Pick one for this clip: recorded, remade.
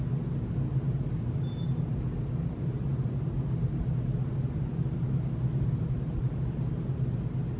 recorded